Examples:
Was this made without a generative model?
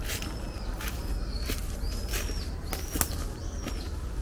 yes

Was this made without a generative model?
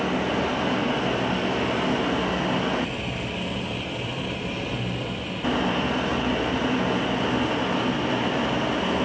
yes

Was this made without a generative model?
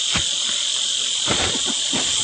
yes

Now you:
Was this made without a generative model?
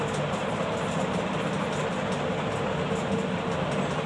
yes